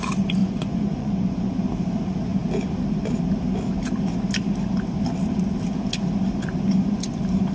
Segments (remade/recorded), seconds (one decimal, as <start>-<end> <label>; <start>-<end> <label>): 0.0-0.4 recorded; 0.4-1.6 remade; 1.6-7.5 recorded